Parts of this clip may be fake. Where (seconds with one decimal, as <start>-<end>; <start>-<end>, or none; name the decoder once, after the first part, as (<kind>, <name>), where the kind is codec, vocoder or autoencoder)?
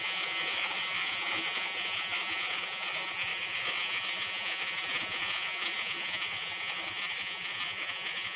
0.0-8.4 (vocoder, Vocos)